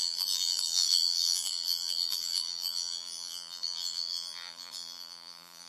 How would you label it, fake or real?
fake